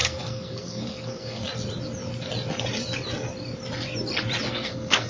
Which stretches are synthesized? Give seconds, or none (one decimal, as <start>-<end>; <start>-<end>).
0.0-1.4; 4.5-5.1